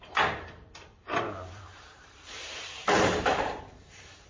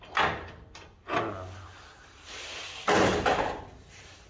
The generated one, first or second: first